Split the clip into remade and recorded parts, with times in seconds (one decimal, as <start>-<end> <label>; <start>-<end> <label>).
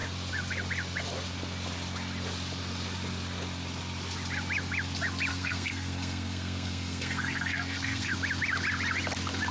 0.0-5.3 recorded; 5.3-8.1 remade; 8.1-9.5 recorded